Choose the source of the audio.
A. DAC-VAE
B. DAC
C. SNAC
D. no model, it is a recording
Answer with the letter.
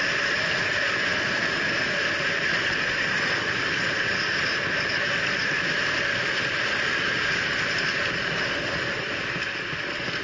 D